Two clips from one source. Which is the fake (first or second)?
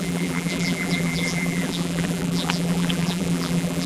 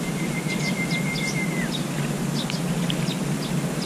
first